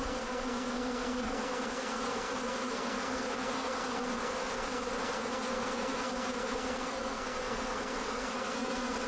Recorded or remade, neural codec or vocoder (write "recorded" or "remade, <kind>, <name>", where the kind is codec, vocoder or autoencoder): remade, codec, SNAC